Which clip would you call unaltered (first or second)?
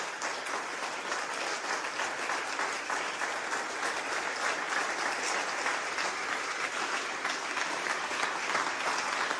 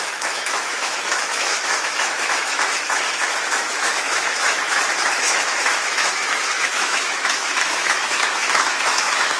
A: first